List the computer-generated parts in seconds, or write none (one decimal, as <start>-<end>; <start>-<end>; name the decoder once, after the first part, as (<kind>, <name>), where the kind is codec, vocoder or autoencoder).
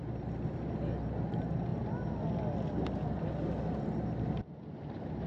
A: none